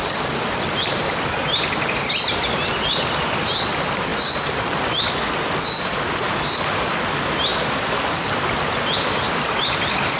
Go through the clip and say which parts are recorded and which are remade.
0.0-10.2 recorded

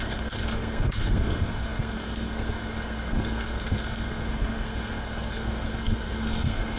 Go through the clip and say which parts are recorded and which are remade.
0.0-6.8 remade